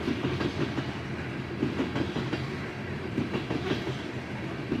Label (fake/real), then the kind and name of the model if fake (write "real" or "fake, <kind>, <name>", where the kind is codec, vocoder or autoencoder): real